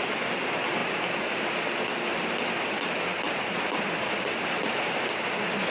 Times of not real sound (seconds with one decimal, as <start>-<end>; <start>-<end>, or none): none